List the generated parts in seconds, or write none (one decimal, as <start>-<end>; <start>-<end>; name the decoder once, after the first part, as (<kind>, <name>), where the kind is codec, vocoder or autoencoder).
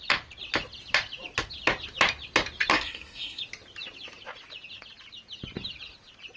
2.7-3.4 (codec, SNAC)